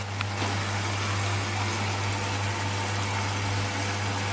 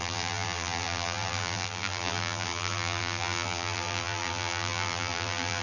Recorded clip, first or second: first